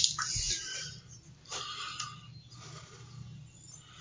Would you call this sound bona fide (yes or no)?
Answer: yes